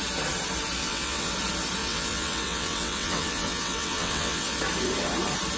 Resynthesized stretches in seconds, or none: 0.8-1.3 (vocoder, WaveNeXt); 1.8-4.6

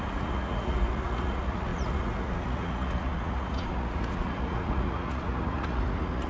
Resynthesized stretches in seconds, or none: 0.0-6.3 (vocoder, Vocos)